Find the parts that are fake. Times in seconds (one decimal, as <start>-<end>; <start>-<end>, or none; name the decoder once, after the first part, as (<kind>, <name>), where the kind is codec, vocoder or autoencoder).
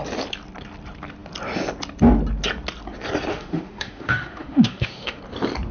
3.3-5.2 (autoencoder, DAC-VAE)